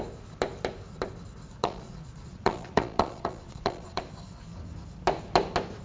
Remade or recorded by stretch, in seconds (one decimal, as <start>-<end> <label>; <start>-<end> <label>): 0.0-1.6 recorded; 1.6-4.0 remade; 4.0-5.8 recorded